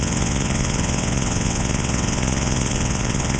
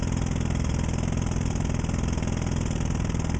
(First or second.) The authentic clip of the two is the second